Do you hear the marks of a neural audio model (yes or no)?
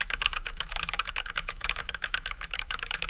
yes